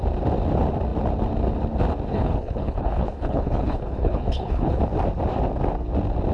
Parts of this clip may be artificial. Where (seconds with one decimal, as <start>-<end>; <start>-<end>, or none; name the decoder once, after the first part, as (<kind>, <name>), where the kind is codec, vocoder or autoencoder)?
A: 2.1-4.8 (codec, HILCodec)